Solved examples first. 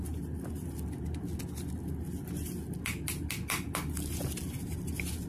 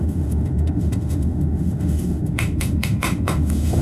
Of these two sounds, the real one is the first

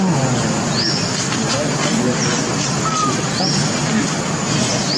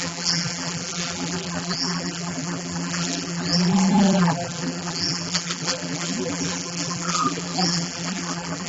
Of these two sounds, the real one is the first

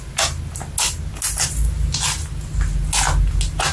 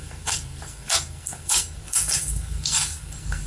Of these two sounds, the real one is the first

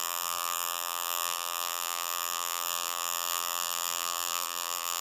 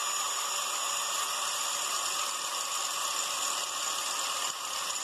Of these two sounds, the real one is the second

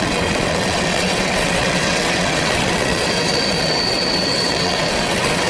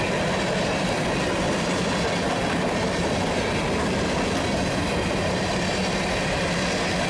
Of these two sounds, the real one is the second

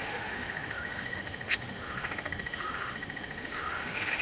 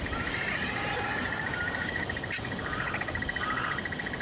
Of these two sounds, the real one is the second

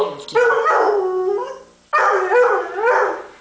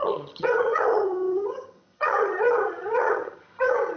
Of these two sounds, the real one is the first